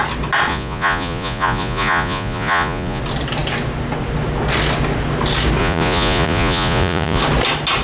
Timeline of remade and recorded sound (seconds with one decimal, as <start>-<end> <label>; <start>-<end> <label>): 0.0-0.5 recorded; 0.5-3.0 remade; 3.0-5.6 recorded; 5.6-7.2 remade; 7.2-7.8 recorded